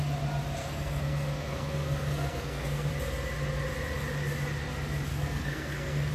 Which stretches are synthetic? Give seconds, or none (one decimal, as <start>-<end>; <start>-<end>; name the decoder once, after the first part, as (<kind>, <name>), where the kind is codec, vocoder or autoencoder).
0.6-2.9 (codec, SNAC); 5.1-6.1